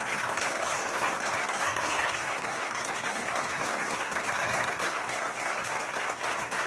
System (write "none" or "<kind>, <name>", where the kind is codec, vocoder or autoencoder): codec, SNAC